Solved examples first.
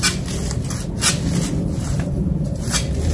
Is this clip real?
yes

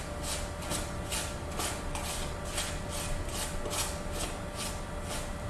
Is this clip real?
yes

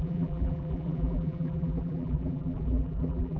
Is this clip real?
no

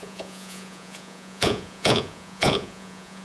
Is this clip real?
no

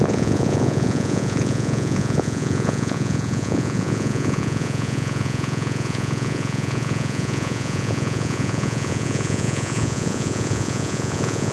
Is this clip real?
no